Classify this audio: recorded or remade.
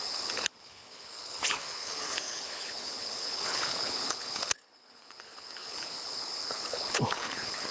remade